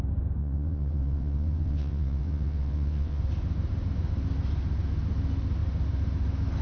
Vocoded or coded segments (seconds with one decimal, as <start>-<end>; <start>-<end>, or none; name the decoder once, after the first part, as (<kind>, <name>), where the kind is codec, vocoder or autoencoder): 0.4-3.2 (vocoder, WaveNeXt)